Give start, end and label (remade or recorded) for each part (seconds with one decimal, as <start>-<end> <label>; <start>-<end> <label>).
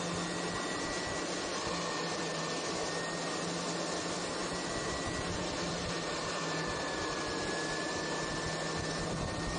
0.0-9.6 recorded